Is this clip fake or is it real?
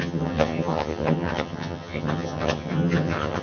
fake